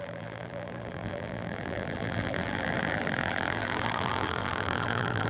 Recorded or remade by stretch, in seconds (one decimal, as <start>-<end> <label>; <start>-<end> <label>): 0.0-5.3 remade